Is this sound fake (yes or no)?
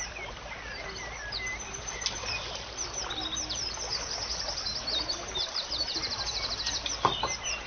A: no